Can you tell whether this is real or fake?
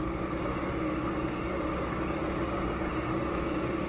fake